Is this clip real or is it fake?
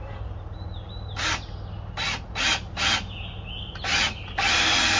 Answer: real